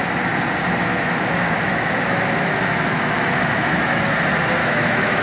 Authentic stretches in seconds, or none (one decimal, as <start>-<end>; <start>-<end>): 0.0-0.9; 4.0-4.6